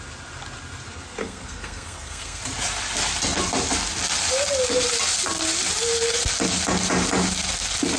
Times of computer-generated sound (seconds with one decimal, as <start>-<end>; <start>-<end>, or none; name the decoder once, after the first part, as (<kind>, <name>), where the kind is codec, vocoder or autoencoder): 1.2-2.4 (codec, SNAC)